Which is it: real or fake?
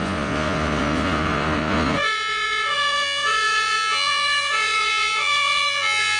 fake